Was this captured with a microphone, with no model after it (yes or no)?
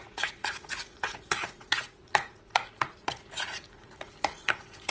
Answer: no